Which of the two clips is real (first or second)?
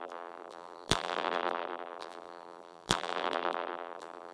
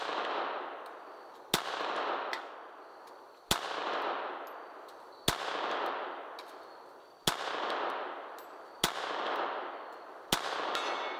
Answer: second